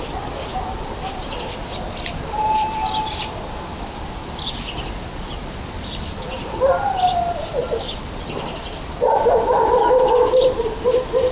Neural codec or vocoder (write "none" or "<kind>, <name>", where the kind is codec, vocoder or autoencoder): vocoder, BigVGAN v2